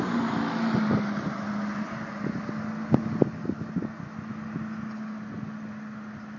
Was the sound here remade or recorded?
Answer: recorded